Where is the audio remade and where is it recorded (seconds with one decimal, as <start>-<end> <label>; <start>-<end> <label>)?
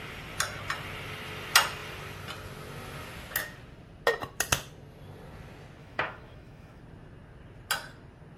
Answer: 0.0-5.8 recorded; 5.8-6.8 remade; 6.8-8.4 recorded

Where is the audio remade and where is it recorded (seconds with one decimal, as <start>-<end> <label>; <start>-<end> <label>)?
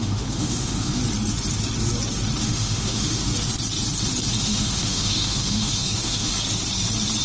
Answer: 0.0-1.0 remade; 1.0-2.4 recorded; 2.4-3.2 remade; 3.2-4.4 recorded; 4.4-6.3 remade; 6.3-7.2 recorded